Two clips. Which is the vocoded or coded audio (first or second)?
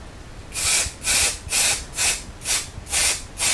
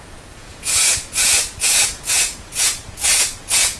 second